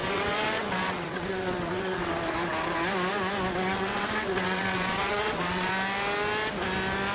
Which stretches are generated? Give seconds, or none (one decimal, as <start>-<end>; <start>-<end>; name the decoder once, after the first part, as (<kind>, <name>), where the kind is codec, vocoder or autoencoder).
0.0-2.1 (vocoder, WaveNeXt); 3.7-5.7